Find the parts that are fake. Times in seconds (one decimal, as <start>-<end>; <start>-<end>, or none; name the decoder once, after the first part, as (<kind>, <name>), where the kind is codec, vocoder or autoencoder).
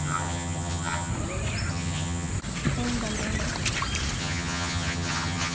0.0-1.1 (vocoder, HiFi-GAN); 1.7-2.3; 4.2-5.5